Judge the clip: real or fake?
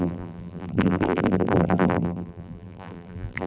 fake